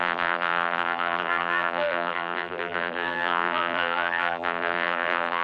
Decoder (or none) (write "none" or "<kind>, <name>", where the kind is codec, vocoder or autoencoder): vocoder, BigVGAN v2